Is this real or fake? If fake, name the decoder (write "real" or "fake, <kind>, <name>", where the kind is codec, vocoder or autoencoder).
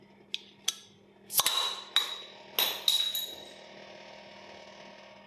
real